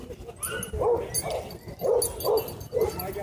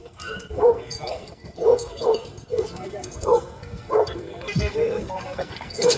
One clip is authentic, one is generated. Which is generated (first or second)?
second